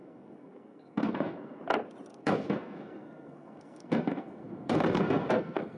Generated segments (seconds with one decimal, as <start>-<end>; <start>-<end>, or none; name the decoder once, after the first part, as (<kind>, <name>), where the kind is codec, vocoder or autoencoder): 0.0-1.6 (codec, SNAC); 2.1-5.8